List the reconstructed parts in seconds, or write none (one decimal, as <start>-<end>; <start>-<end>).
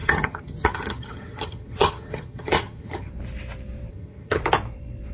0.0-3.1; 3.9-4.4